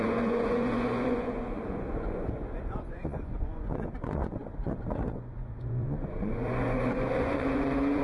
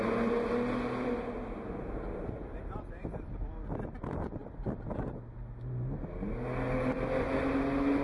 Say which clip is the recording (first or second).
second